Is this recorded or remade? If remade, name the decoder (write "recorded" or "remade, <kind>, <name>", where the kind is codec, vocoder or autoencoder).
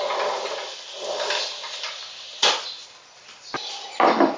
recorded